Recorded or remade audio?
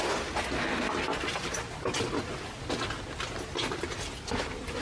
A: recorded